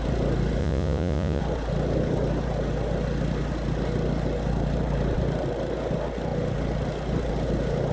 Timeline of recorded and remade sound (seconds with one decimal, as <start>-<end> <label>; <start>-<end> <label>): 0.0-0.6 recorded; 0.6-1.4 remade; 1.4-7.9 recorded